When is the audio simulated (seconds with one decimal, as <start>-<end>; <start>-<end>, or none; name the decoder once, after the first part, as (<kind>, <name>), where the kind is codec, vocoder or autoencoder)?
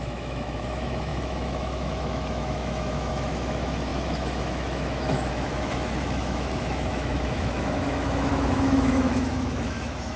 0.0-10.2 (autoencoder, DAC-VAE)